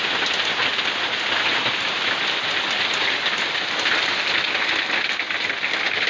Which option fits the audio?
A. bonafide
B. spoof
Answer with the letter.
A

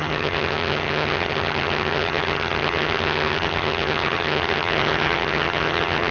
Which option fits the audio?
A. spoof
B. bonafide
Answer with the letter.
A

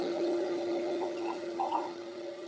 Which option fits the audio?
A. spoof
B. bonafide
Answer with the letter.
A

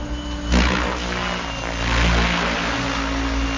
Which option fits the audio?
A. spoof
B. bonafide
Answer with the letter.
B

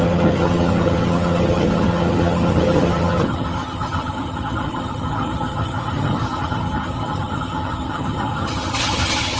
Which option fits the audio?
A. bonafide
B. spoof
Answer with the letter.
B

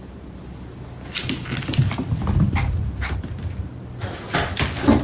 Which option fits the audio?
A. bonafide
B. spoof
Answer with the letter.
A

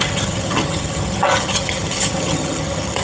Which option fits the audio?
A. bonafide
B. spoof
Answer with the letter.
B